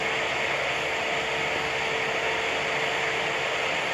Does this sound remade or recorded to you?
recorded